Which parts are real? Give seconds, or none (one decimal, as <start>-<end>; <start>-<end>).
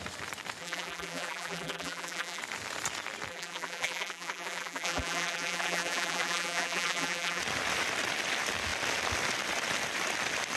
0.0-0.6; 2.4-3.3; 7.4-10.6